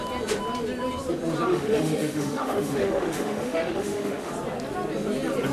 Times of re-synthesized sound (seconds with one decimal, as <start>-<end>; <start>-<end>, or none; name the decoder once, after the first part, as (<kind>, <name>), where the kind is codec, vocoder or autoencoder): 1.5-4.3 (autoencoder, DAC-VAE)